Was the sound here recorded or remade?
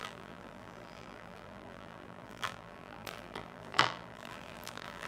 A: remade